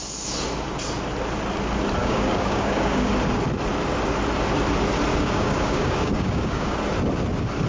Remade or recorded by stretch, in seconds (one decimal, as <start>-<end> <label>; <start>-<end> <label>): 0.0-2.0 recorded; 2.0-3.1 remade; 3.1-5.1 recorded; 5.1-6.8 remade; 6.8-7.7 recorded